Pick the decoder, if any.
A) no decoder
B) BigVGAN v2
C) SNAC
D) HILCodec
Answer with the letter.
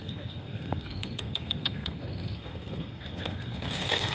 C